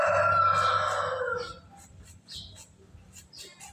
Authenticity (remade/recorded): recorded